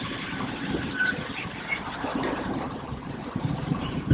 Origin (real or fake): fake